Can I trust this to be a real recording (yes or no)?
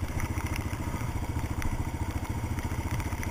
no